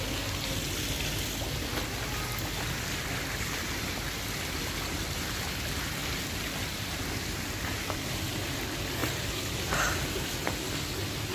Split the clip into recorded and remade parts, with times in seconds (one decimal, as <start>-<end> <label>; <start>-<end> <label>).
0.0-6.0 recorded; 6.0-8.3 remade; 8.3-9.0 recorded; 9.0-9.8 remade; 9.8-11.3 recorded